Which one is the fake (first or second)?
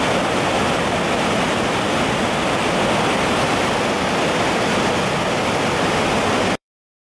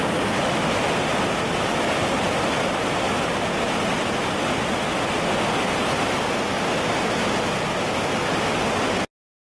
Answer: first